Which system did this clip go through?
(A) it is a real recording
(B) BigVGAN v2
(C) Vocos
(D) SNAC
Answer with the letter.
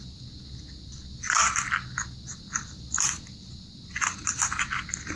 A